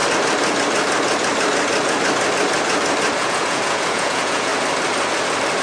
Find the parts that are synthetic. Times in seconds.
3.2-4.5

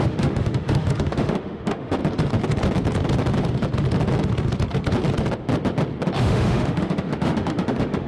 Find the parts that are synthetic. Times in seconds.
0.0-2.0; 6.2-8.1

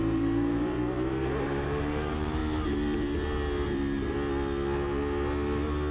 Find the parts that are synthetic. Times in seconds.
0.0-2.4

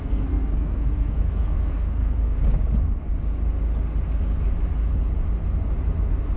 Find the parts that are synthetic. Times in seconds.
0.0-2.4